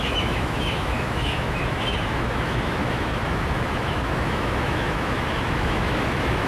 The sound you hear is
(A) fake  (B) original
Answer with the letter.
A